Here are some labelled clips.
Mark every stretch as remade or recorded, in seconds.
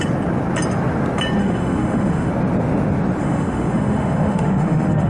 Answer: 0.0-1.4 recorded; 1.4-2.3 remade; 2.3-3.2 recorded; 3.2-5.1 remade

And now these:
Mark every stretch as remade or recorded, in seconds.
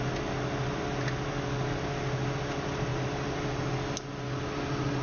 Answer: 0.0-5.0 recorded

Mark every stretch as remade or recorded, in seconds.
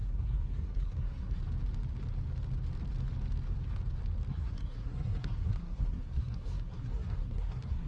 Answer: 0.0-1.4 remade; 1.4-4.3 recorded; 4.3-7.9 remade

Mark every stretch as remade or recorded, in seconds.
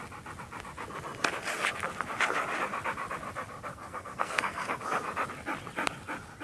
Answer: 0.0-3.7 recorded; 3.7-4.8 remade; 4.8-6.4 recorded